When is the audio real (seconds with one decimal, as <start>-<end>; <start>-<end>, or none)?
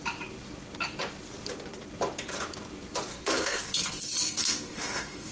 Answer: 0.0-3.1